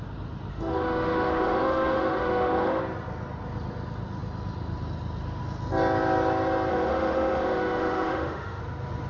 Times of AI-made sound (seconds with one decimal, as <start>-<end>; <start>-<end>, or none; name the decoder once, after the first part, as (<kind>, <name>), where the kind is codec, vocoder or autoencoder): 0.5-2.8 (autoencoder, DAC-VAE); 6.7-8.6

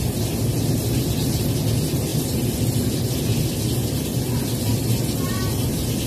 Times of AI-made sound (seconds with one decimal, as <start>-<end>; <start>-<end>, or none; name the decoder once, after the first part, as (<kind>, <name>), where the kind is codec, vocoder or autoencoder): none

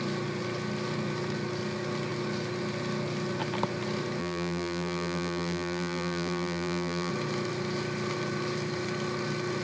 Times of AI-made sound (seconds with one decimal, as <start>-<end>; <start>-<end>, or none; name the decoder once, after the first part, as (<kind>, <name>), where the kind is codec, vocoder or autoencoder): 4.2-7.1 (vocoder, BigVGAN v2)

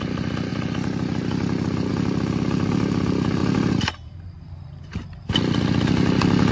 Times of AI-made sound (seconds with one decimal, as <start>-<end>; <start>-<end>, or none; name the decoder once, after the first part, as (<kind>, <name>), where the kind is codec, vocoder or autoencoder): 3.4-5.3 (vocoder, BigVGAN v2)

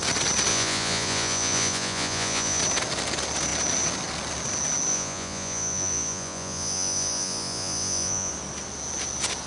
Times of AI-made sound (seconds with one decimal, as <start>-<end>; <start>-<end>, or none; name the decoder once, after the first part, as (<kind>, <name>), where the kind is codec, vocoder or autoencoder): 0.5-2.6 (vocoder, Vocos); 4.9-8.3

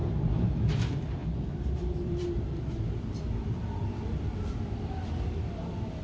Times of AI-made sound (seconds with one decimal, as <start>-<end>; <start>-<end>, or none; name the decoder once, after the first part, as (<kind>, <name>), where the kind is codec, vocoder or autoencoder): 0.7-6.0 (vocoder, BigVGAN v2)